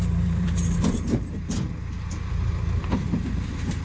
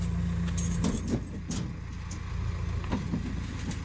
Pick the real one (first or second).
second